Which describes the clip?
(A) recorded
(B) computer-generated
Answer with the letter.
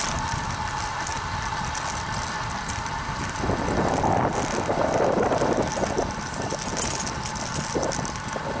A